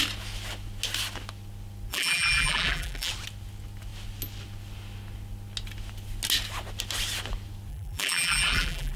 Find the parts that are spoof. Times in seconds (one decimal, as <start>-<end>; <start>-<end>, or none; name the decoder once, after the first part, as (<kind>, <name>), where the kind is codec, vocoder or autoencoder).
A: 1.9-3.1 (vocoder, BigVGAN v2); 7.7-9.0